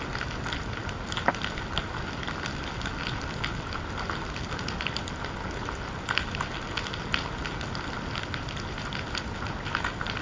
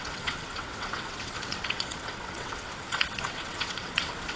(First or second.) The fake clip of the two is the second